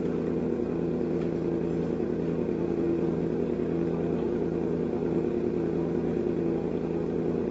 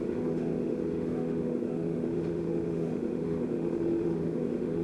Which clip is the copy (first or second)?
second